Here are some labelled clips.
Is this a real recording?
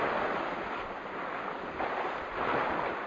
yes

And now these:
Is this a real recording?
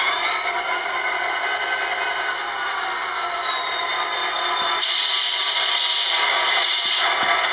yes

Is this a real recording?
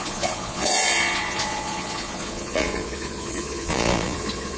no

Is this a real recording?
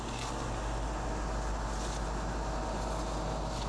yes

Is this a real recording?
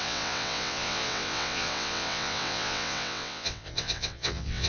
no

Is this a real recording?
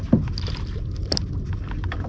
yes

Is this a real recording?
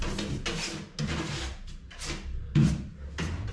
yes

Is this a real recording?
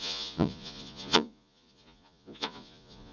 no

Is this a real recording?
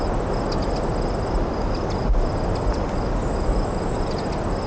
yes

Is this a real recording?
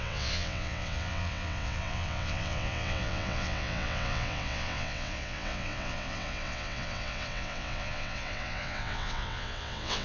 no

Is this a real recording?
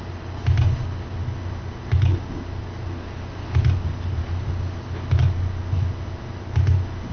yes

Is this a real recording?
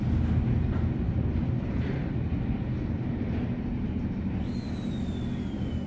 yes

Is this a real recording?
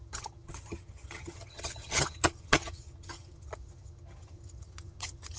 no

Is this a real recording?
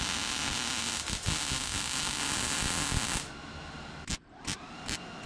yes